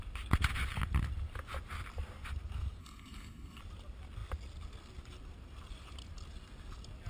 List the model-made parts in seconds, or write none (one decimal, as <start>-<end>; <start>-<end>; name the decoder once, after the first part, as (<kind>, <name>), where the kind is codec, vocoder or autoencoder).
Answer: 2.8-3.6 (codec, SNAC)